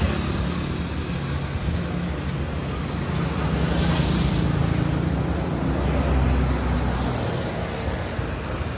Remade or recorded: recorded